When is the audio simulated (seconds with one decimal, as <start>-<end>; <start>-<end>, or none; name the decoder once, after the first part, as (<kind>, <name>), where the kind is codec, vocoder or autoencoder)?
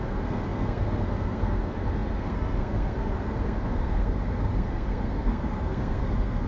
0.0-6.5 (codec, SNAC)